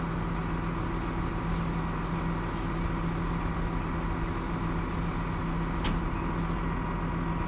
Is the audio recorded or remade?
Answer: recorded